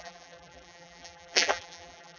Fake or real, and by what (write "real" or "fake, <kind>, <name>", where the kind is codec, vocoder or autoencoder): fake, vocoder, BigVGAN v2